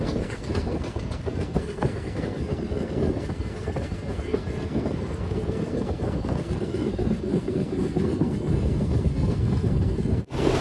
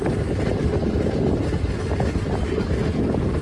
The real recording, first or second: second